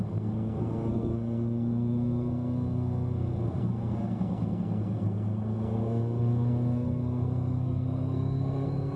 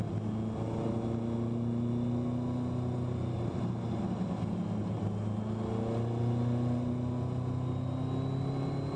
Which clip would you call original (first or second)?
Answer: second